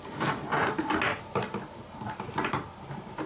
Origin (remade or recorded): recorded